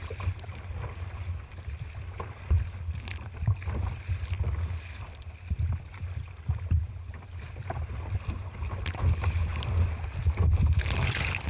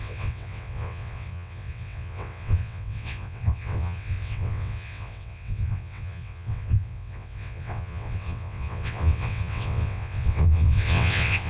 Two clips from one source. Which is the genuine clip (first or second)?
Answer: first